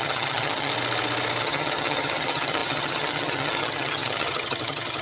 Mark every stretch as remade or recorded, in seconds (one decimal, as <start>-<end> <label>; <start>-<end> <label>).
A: 0.0-0.7 remade; 0.7-1.4 recorded; 1.4-5.0 remade